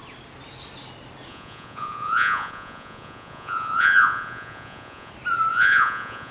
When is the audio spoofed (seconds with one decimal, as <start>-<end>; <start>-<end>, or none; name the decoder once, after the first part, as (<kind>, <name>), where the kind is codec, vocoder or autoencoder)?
1.3-5.1 (vocoder, Vocos); 5.5-6.3